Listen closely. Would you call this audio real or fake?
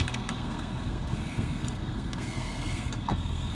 fake